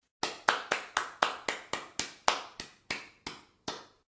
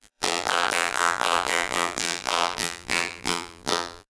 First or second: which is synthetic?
second